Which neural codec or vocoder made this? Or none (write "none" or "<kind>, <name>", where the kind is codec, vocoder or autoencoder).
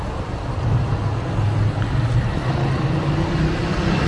none